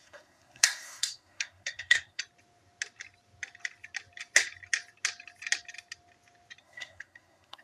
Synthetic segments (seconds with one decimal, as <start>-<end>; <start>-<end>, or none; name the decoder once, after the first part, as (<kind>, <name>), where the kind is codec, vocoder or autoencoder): 0.0-2.2 (codec, SNAC); 6.6-7.6